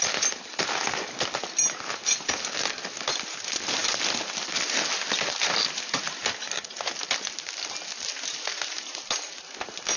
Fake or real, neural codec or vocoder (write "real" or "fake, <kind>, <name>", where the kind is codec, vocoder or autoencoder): real